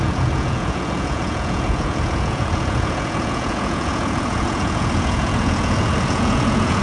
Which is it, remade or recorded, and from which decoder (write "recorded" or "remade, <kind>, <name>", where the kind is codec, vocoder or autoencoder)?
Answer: remade, vocoder, Vocos